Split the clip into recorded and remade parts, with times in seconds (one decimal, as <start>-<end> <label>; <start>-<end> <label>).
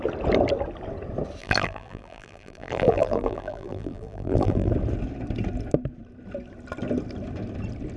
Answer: 0.0-1.4 recorded; 1.4-4.7 remade; 4.7-8.0 recorded